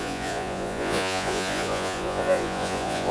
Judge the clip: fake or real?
fake